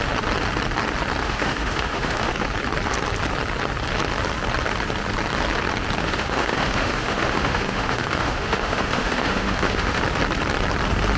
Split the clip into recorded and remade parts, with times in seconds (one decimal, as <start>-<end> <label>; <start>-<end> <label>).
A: 0.0-1.2 recorded; 1.2-2.3 remade; 2.3-6.0 recorded; 6.0-10.0 remade; 10.0-11.2 recorded